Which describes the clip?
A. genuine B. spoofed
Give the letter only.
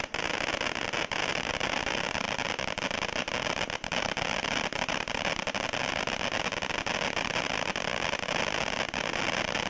A